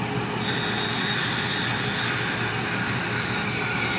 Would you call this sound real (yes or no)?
yes